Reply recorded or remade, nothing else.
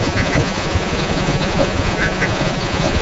remade